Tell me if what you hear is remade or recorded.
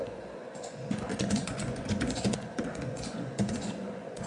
remade